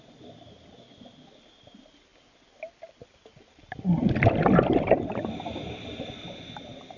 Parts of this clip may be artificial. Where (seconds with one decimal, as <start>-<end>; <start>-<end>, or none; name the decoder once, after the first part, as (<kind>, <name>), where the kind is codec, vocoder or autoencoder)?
none